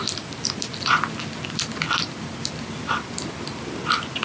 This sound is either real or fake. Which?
real